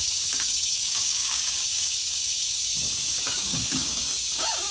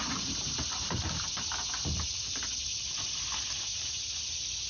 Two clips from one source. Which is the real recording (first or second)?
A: second